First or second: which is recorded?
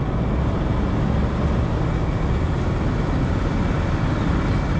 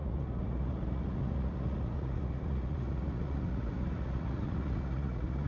first